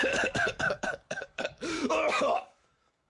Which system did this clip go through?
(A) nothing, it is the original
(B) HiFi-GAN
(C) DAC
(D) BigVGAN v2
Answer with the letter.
C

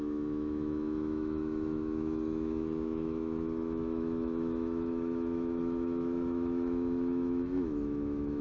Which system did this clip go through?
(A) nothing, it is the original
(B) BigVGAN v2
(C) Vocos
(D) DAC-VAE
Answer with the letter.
D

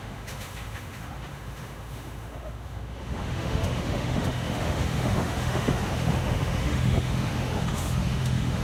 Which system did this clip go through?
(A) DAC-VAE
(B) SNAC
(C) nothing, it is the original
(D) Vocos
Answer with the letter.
A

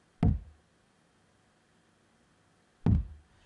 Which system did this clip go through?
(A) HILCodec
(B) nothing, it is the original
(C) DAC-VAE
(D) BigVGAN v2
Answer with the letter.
B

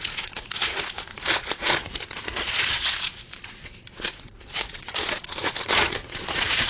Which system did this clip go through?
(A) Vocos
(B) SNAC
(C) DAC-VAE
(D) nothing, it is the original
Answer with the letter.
A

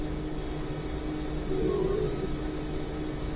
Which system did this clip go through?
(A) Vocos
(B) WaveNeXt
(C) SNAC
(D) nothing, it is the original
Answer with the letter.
D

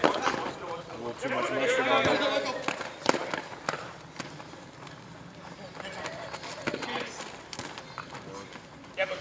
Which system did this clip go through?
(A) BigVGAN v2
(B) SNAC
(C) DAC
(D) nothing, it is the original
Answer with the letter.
D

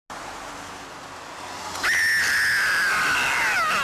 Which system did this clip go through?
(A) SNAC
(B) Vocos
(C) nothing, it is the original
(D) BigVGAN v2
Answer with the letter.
C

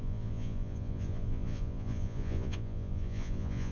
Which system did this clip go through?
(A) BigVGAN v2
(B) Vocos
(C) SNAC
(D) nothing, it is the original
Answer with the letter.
B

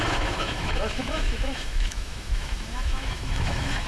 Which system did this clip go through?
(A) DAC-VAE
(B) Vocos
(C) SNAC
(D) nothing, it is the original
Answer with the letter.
A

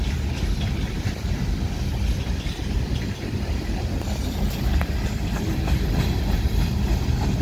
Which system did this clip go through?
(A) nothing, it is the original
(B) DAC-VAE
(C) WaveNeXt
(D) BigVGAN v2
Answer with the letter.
A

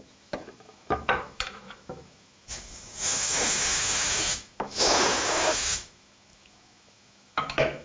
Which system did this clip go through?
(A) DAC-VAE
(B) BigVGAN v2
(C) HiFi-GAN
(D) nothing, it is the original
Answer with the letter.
A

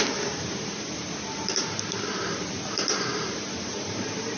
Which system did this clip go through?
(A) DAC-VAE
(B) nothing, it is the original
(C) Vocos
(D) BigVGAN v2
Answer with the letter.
D